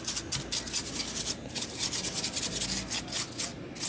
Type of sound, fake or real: real